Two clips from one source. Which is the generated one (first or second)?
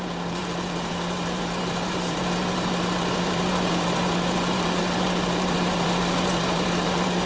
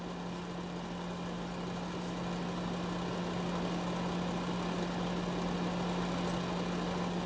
first